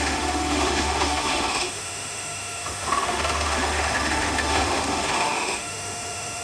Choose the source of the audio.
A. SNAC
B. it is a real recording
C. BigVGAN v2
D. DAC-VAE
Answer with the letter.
D